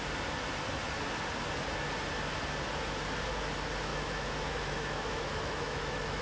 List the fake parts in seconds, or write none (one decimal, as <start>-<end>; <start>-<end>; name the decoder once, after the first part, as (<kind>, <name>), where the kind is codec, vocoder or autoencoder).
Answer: 3.9-6.2 (autoencoder, DAC-VAE)

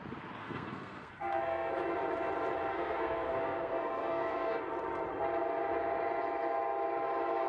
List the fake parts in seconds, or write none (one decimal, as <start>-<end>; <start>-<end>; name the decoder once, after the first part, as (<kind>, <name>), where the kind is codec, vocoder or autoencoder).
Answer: 0.4-1.7 (codec, SNAC); 2.7-4.6

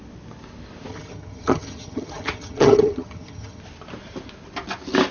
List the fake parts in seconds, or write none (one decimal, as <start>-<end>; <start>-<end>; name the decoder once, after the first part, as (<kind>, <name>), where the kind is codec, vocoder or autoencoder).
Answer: 0.9-3.6 (vocoder, HiFi-GAN)

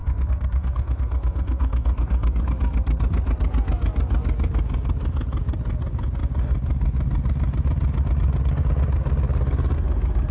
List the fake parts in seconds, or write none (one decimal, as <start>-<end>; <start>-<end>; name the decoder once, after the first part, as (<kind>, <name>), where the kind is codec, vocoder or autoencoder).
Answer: 0.0-2.4 (codec, SNAC)